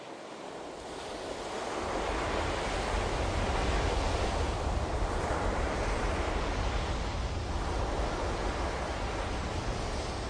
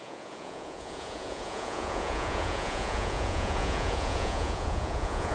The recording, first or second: first